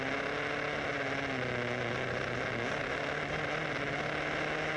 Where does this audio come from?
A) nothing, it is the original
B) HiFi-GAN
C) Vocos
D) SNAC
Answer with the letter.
A